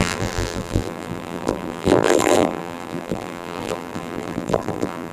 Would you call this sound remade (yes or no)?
yes